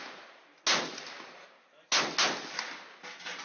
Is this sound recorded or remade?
recorded